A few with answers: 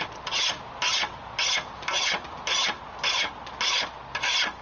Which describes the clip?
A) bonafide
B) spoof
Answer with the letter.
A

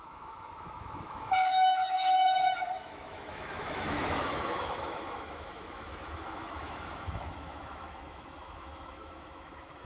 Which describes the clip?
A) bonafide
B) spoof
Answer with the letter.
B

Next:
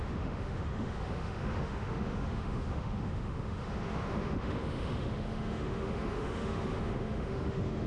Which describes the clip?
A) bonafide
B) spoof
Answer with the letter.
B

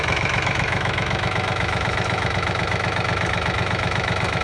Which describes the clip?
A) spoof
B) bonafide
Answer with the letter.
A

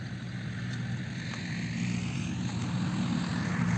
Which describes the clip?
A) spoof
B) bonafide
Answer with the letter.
B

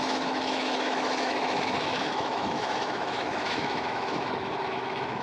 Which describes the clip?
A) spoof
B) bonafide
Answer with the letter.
A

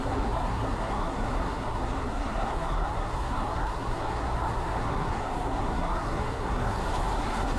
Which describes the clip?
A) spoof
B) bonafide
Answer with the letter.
A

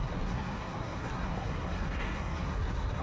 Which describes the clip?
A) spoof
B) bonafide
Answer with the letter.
A